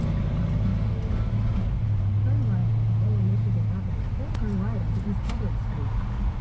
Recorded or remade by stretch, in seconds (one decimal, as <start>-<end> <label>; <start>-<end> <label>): 0.0-6.4 recorded